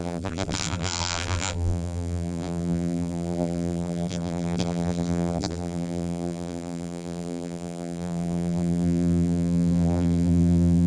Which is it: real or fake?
fake